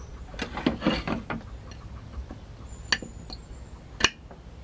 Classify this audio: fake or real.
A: real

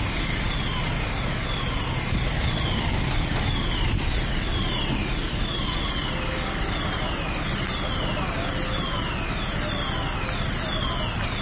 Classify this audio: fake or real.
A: real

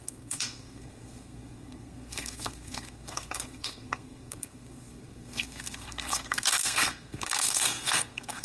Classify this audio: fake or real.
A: fake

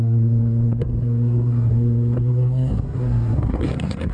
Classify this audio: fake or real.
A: fake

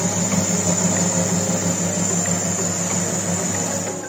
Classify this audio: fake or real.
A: real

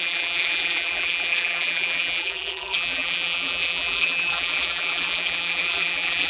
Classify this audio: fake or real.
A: fake